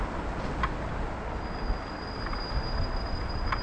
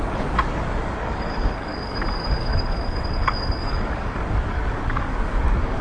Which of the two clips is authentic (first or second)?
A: first